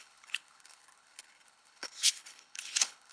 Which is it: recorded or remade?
remade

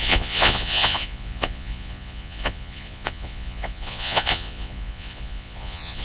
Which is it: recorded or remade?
remade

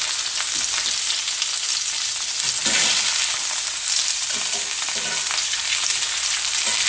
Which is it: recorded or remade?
recorded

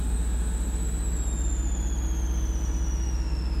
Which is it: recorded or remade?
recorded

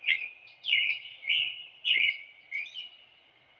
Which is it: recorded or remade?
remade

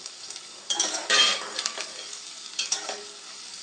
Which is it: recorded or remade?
remade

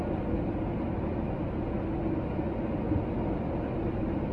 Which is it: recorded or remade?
recorded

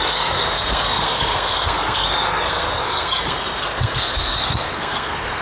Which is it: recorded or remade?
remade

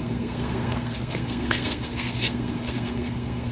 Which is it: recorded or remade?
remade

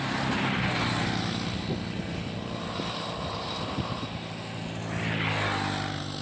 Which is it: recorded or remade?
recorded